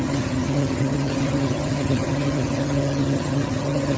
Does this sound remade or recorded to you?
remade